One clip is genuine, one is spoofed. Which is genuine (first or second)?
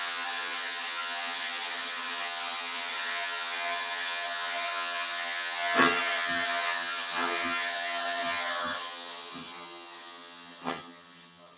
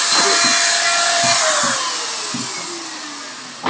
second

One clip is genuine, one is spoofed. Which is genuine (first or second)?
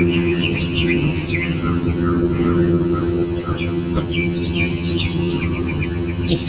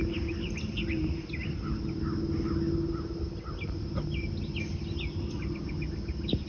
second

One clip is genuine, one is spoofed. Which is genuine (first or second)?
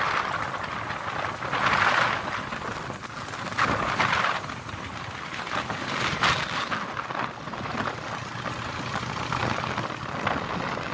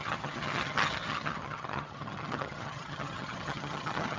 first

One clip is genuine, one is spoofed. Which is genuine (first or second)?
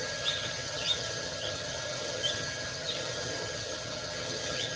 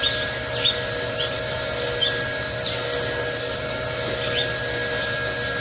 second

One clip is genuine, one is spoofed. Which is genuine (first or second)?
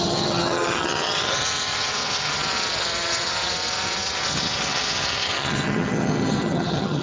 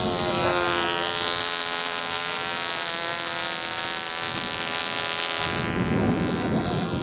second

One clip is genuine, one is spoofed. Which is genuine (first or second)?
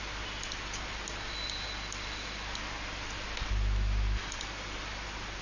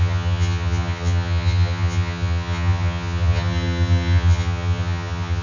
first